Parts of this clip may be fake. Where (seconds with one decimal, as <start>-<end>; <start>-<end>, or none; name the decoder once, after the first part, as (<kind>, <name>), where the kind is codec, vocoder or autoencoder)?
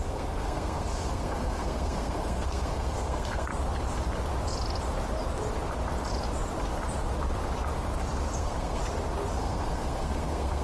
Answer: 0.0-3.5 (codec, SNAC); 8.4-8.8; 9.4-10.6